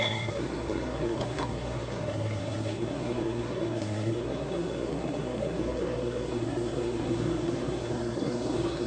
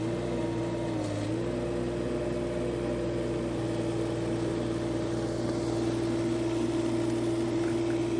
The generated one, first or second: first